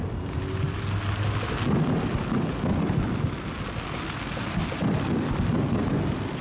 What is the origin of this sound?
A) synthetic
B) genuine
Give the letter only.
B